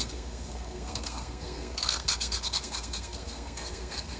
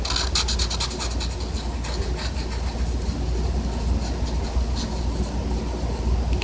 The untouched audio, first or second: second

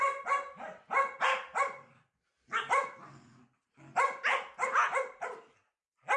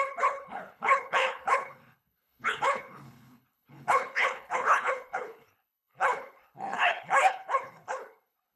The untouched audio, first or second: first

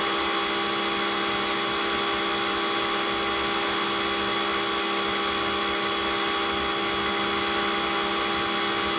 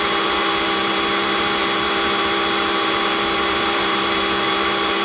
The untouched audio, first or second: first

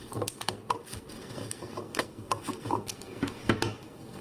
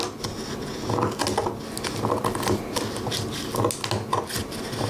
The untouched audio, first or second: second